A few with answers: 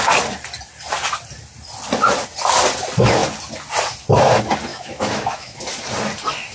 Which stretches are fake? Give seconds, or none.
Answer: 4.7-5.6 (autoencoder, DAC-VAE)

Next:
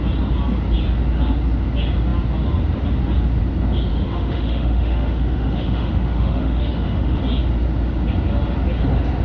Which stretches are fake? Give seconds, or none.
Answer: 3.9-7.2 (autoencoder, DAC-VAE)

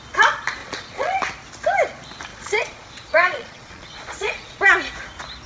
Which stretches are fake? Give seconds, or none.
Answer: 0.6-1.2 (vocoder, Vocos); 2.3-4.6

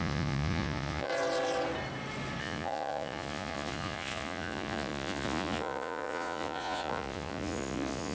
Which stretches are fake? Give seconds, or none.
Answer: 0.0-1.1 (vocoder, Vocos); 2.4-8.1

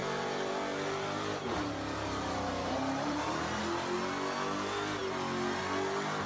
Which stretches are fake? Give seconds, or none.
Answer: 0.0-3.6 (vocoder, BigVGAN v2)

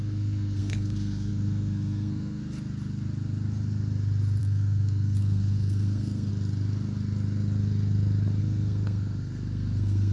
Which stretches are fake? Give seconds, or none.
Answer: 0.0-2.4 (codec, SNAC); 4.4-6.3; 8.4-10.1